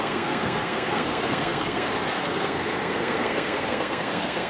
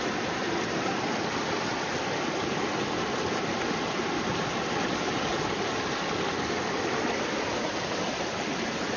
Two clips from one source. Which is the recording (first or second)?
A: second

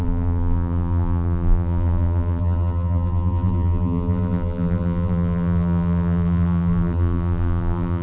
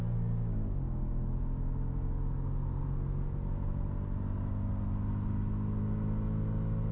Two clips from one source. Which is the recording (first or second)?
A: second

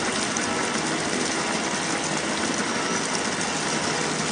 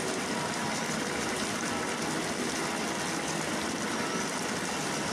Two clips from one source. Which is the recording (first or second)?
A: first